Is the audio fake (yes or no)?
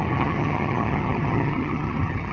yes